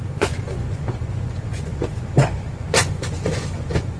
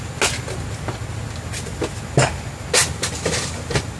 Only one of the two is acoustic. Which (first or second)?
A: second